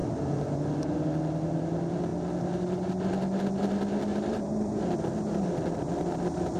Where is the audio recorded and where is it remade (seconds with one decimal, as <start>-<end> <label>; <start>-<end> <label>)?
0.0-4.1 recorded; 4.1-4.7 remade; 4.7-6.6 recorded